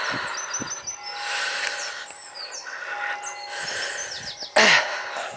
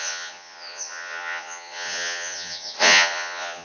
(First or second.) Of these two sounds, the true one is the first